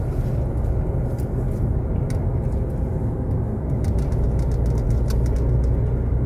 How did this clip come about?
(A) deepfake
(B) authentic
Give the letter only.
B